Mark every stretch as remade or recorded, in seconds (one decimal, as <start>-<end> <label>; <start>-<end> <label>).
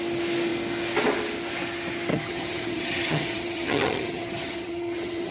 0.0-2.1 recorded; 2.1-5.3 remade